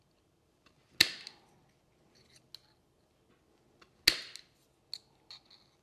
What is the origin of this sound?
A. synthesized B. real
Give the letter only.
B